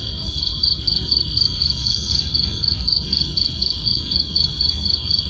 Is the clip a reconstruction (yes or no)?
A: yes